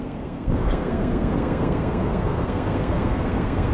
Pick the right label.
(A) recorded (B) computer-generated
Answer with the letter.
B